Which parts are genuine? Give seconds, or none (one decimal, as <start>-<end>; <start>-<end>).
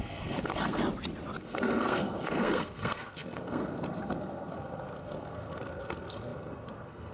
0.8-1.4